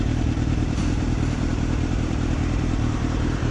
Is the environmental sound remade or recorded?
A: remade